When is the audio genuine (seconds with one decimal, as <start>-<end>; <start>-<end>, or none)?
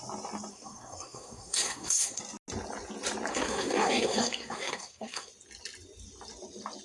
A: 0.0-0.5; 2.2-3.3; 5.3-6.8